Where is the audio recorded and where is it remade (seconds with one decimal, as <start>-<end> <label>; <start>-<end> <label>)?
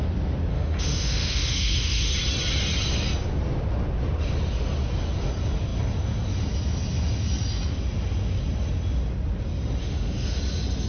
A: 0.0-0.5 recorded; 0.5-2.1 remade; 2.1-9.8 recorded; 9.8-10.4 remade; 10.4-10.9 recorded